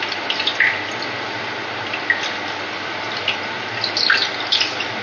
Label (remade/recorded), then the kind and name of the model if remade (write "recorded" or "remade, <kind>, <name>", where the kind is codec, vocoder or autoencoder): recorded